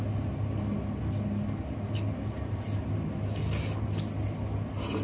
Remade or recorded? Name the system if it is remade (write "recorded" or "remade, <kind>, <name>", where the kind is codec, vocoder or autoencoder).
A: recorded